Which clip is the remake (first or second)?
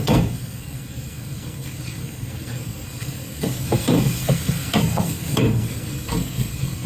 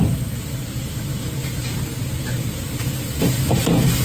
first